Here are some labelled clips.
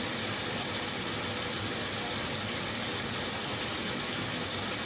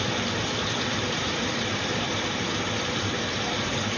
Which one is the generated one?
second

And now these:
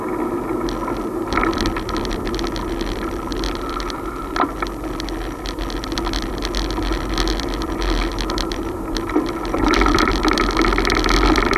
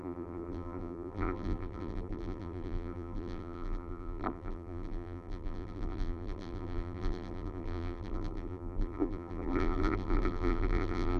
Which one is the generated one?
second